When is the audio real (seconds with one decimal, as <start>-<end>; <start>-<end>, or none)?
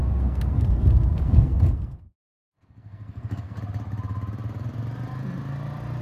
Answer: 3.6-6.0